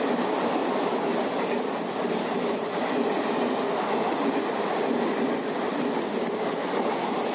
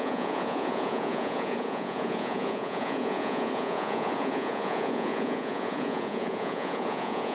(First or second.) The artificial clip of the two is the second